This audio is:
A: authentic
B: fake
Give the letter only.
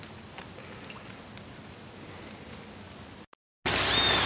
A